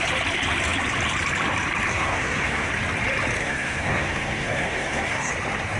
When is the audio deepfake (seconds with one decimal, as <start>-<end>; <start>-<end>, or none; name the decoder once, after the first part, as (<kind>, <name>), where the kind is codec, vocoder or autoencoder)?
1.9-2.7 (codec, SNAC); 3.4-5.3